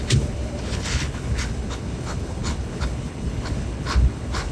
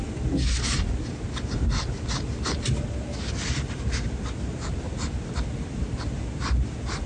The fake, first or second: first